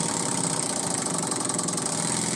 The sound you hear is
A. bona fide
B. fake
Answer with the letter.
A